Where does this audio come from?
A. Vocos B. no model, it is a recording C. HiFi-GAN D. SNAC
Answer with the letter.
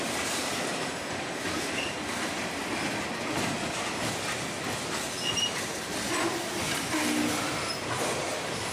B